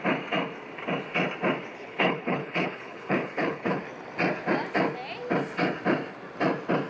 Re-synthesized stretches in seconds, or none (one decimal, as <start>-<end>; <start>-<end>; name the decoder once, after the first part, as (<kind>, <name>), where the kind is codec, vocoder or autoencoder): 1.7-3.8 (codec, HILCodec)

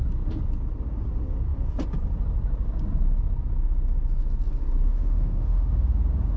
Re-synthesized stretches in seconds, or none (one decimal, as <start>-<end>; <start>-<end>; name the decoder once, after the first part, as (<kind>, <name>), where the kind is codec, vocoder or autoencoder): 4.9-6.0 (autoencoder, DAC-VAE)